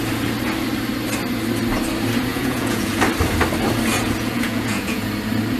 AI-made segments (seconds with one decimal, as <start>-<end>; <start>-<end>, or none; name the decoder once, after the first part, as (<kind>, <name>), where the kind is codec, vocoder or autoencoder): 2.3-3.0 (vocoder, Vocos); 3.9-5.1